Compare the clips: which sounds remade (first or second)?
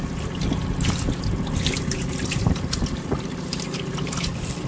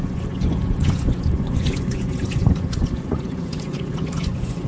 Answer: second